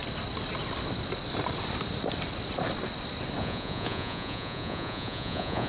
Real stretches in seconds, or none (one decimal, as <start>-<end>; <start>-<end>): 0.0-3.4